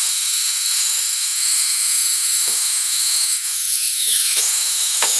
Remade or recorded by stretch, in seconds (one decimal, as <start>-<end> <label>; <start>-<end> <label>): 0.0-5.2 remade